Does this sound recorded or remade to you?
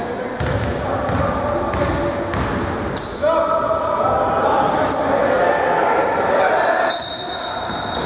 recorded